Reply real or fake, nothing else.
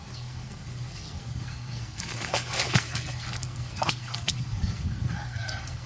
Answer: fake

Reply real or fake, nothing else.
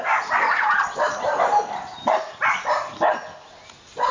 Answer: real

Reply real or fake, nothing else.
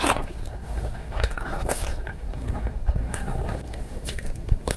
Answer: fake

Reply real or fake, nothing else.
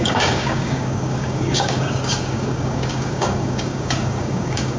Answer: fake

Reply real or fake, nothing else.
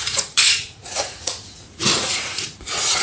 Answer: fake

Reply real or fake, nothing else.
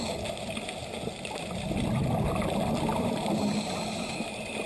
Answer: real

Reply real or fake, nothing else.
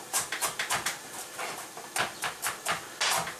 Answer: real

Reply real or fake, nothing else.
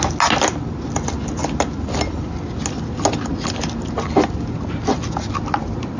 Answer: real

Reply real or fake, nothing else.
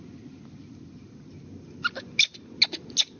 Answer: real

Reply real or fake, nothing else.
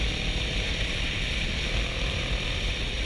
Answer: real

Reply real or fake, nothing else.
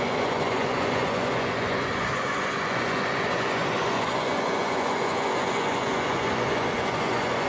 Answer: fake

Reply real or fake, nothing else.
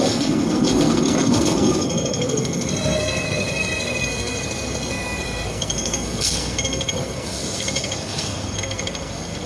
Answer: fake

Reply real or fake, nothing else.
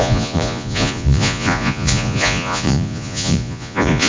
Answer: fake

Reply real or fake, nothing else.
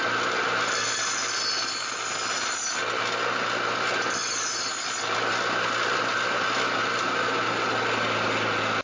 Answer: real